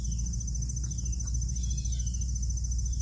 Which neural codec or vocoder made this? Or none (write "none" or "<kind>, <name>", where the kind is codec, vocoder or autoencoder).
none